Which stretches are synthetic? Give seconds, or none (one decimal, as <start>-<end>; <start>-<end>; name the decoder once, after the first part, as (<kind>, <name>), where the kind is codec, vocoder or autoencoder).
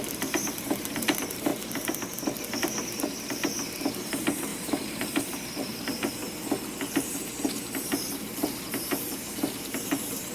0.0-1.5 (vocoder, BigVGAN v2); 2.6-6.2; 6.9-10.3